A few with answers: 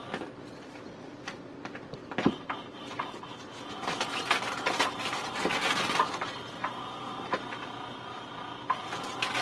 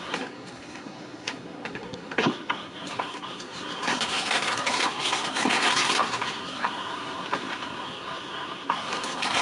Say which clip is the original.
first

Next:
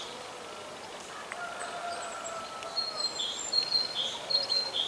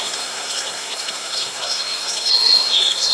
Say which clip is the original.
first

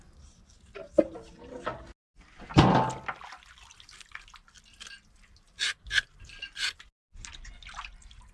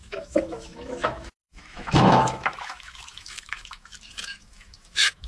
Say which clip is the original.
first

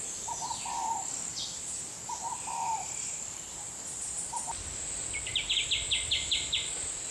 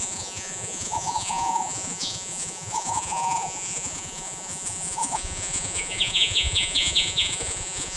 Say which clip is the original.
first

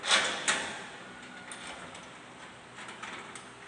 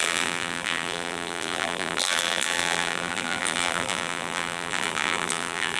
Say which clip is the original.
first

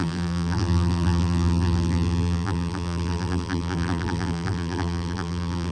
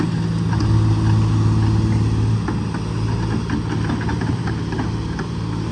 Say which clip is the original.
second